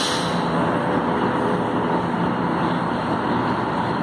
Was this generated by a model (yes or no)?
no